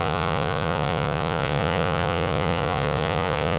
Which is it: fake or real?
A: fake